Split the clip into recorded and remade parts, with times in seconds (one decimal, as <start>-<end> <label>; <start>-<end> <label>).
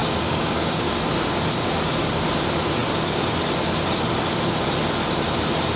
0.0-1.0 remade; 1.0-5.8 recorded